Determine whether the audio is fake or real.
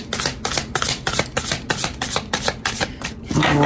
real